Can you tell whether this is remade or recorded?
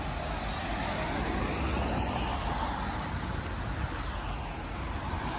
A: recorded